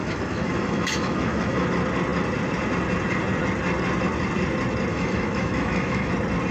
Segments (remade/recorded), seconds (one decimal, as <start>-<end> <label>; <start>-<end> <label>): 0.0-1.7 remade; 1.7-4.9 recorded; 4.9-6.1 remade; 6.1-6.5 recorded